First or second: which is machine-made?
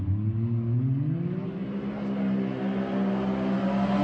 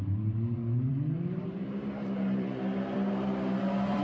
second